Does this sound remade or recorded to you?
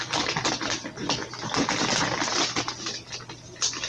recorded